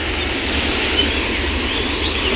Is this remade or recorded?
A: recorded